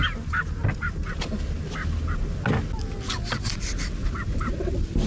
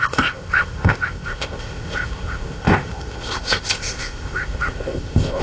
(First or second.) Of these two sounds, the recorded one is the first